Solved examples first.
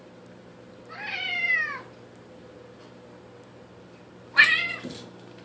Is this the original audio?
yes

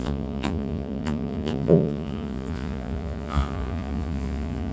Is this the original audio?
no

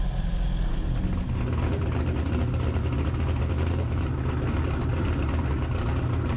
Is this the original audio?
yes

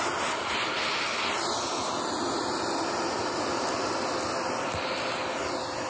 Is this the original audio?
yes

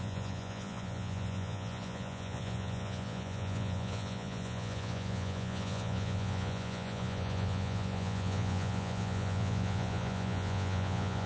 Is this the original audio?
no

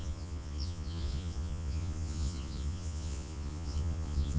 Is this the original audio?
no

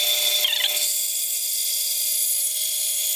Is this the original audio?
yes